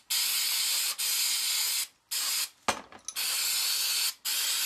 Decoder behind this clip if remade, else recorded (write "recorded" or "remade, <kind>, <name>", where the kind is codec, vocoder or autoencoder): recorded